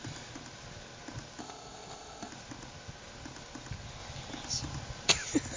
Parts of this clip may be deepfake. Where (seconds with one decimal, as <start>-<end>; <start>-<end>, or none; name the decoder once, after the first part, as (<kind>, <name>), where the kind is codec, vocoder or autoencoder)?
1.4-2.3 (codec, ZipCodec)